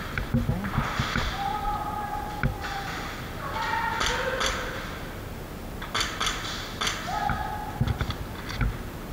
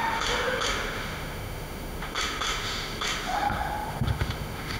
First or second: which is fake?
second